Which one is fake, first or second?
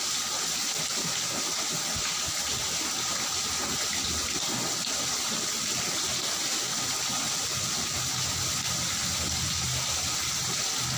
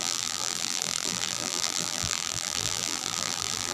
second